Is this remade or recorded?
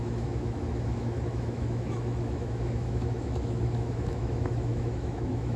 remade